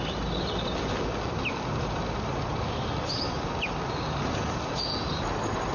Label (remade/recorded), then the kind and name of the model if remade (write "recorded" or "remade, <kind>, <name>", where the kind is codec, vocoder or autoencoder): recorded